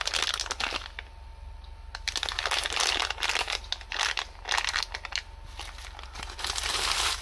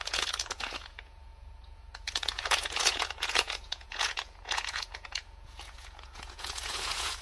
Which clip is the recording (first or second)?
first